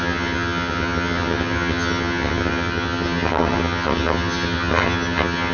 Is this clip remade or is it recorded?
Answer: remade